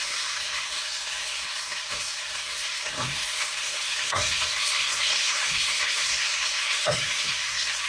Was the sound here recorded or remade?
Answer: remade